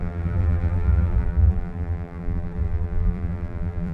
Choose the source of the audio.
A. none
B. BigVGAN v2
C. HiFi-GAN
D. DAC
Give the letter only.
B